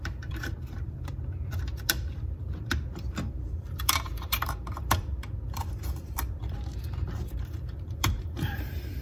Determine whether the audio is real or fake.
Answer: fake